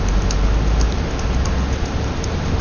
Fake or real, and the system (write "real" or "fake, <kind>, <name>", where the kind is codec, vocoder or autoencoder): real